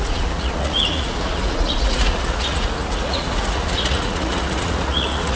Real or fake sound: fake